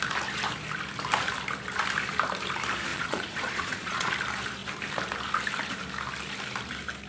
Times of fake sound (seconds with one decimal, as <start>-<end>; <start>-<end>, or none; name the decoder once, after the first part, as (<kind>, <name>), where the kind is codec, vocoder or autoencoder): 2.9-4.1 (vocoder, Vocos)